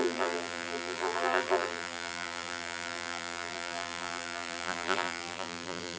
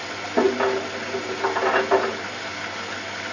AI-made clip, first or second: first